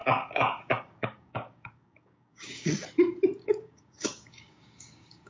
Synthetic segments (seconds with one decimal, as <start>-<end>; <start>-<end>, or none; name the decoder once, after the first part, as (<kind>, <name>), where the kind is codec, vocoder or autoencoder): 0.0-2.7 (codec, DAC); 3.4-5.3